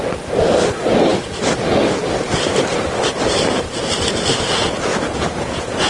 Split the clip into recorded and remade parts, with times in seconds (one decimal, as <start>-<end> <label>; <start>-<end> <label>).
0.0-4.9 recorded; 4.9-5.9 remade

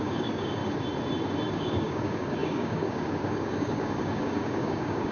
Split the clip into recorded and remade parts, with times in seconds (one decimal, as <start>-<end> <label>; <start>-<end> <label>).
0.0-0.6 remade; 0.6-1.5 recorded; 1.5-5.1 remade

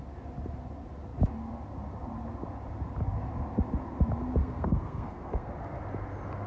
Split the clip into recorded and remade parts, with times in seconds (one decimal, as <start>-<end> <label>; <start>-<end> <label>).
0.0-4.4 recorded; 4.4-5.5 remade; 5.5-6.5 recorded